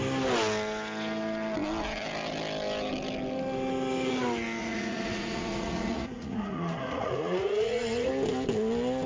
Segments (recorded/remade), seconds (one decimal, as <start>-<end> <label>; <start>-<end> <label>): 0.0-4.6 recorded; 4.6-8.1 remade; 8.1-9.1 recorded